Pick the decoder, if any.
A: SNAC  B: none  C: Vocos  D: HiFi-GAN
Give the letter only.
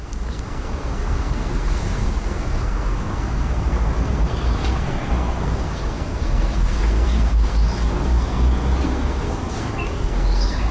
A